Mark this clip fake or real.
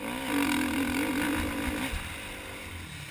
real